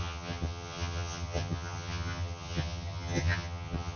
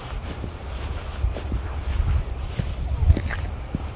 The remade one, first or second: first